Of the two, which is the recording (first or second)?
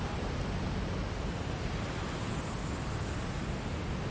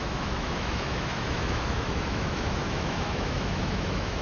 first